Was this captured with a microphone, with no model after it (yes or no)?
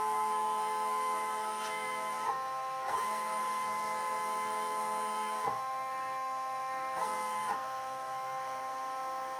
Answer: no